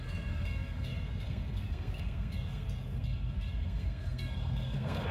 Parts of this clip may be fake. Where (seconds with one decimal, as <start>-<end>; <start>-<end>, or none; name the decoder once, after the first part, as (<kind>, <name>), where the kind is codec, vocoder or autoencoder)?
0.0-5.1 (codec, SNAC)